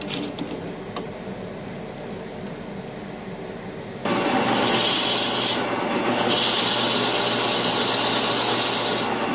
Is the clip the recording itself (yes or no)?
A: yes